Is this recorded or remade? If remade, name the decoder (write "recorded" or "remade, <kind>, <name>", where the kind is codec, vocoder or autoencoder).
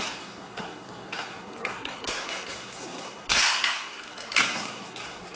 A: remade, codec, SNAC